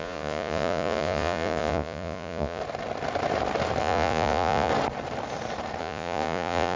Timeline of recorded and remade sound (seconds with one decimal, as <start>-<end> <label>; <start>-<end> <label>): 0.0-2.6 remade; 2.6-3.8 recorded; 3.8-4.7 remade; 4.7-5.8 recorded; 5.8-6.8 remade